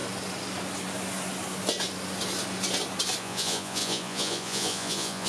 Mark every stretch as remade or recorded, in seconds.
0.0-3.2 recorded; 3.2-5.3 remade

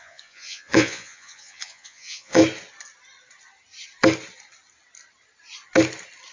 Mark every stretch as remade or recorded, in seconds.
0.0-2.4 remade; 2.4-6.3 recorded

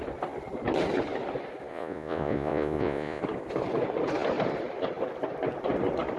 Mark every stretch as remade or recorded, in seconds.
0.0-1.7 recorded; 1.7-3.2 remade; 3.2-6.2 recorded

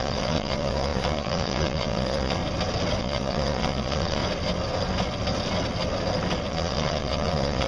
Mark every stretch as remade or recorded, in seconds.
0.0-2.4 remade; 2.4-3.0 recorded; 3.0-4.2 remade; 4.2-6.5 recorded; 6.5-7.7 remade

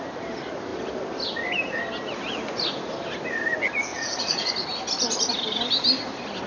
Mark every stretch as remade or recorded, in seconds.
0.0-3.9 recorded; 3.9-4.5 remade; 4.5-6.5 recorded

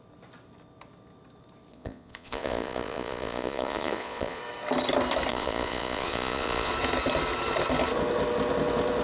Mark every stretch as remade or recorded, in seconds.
0.0-1.7 recorded; 1.7-4.4 remade; 4.4-5.3 recorded; 5.3-6.7 remade; 6.7-9.0 recorded

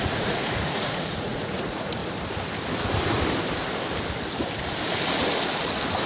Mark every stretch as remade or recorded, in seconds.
0.0-2.0 remade; 2.0-6.1 recorded

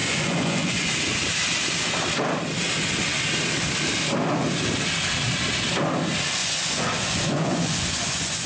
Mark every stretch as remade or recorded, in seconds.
0.0-0.9 remade; 0.9-6.4 recorded; 6.4-8.5 remade